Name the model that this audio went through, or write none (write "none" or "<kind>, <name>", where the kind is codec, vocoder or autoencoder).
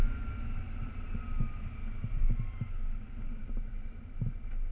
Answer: none